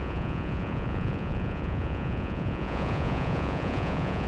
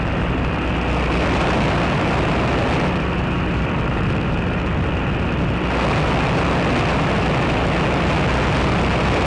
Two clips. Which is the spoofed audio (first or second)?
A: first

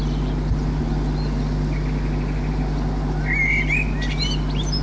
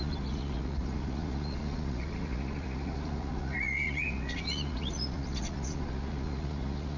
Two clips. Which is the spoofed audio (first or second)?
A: second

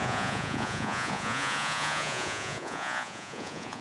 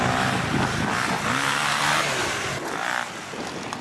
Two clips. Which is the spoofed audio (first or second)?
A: first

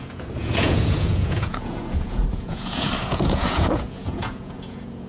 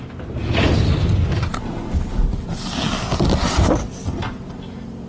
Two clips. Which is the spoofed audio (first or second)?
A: first